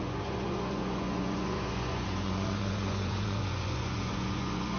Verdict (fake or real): fake